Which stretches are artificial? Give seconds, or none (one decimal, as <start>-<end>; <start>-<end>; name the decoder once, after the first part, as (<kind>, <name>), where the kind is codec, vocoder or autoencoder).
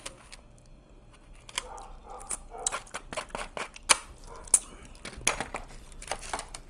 none